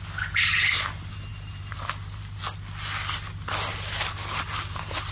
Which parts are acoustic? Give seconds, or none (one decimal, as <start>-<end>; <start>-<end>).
0.0-1.3; 2.4-5.1